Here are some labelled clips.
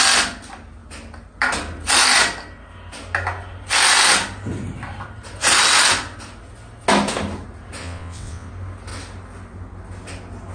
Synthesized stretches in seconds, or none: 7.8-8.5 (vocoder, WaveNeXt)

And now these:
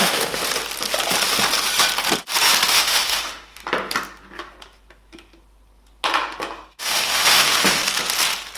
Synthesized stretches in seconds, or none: 0.0-0.4 (autoencoder, DAC-VAE); 2.7-3.6; 6.8-7.8

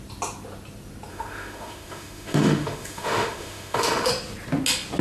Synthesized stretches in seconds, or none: 1.1-4.1 (autoencoder, DAC-VAE)

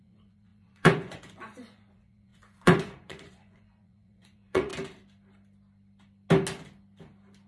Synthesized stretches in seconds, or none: 0.0-4.7 (vocoder, Vocos)

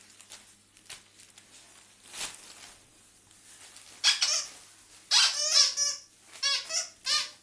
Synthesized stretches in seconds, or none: none